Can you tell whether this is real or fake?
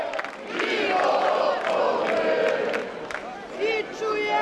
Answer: real